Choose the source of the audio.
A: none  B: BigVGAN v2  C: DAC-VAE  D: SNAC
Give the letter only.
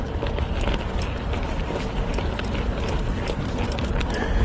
B